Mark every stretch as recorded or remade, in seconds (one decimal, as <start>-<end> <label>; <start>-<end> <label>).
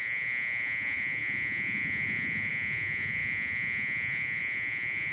0.0-5.1 remade